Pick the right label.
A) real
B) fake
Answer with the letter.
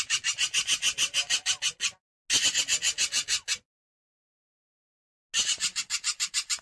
A